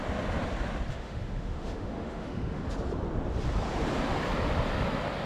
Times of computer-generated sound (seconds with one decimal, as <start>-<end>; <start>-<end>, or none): 0.9-2.6

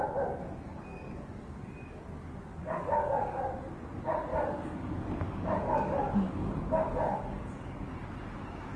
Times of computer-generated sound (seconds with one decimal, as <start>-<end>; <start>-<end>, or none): 0.9-2.0; 2.5-3.7; 4.3-7.9

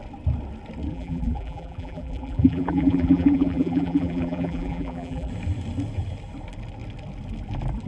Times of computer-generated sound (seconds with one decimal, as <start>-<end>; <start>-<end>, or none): 0.9-5.3

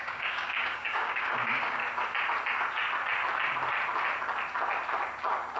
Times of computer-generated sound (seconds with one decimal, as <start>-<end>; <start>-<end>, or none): 0.0-1.8